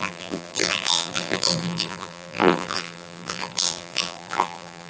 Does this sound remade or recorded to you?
remade